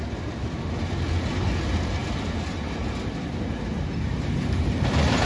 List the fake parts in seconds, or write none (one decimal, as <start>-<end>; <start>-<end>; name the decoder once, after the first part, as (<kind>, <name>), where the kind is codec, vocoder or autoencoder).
none